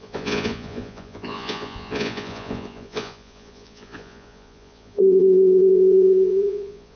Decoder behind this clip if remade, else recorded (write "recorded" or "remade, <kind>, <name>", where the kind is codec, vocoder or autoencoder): remade, vocoder, Vocos